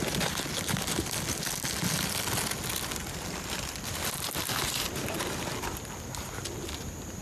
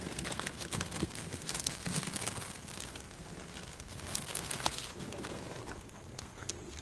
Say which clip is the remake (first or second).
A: second